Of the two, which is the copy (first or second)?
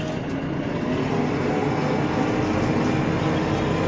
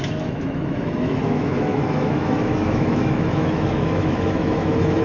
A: second